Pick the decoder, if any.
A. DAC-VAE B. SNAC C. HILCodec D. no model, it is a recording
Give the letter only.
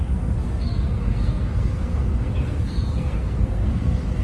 B